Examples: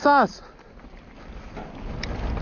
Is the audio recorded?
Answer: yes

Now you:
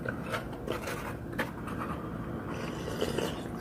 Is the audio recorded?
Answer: yes